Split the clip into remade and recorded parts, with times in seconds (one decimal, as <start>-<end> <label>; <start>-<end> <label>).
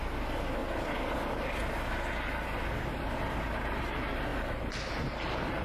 0.0-5.6 recorded